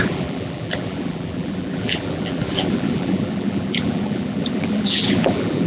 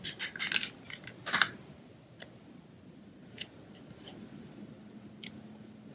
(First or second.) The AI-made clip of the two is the first